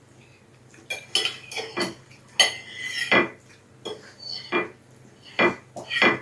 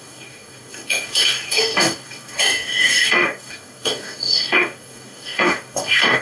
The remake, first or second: second